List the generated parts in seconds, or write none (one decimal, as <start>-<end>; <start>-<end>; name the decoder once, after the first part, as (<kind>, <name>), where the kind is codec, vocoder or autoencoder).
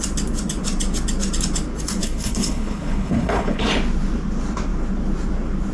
2.0-3.7 (codec, HILCodec)